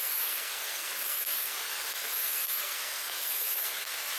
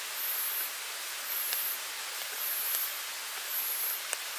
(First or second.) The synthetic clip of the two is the first